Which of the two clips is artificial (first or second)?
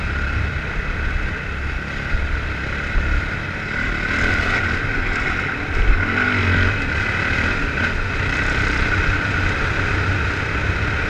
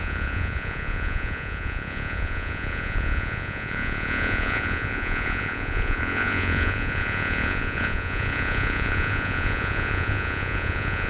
second